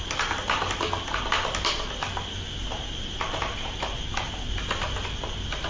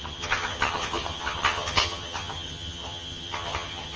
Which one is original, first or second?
first